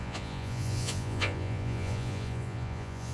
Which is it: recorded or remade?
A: remade